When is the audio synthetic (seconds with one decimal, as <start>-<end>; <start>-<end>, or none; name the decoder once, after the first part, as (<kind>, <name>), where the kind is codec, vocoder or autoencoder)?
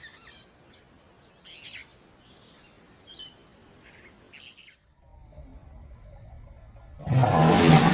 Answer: none